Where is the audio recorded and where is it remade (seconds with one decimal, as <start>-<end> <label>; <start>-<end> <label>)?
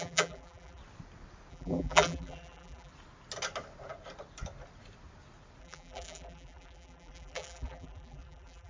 0.0-0.8 remade; 0.8-1.5 recorded; 1.5-2.9 remade; 2.9-5.6 recorded; 5.6-8.7 remade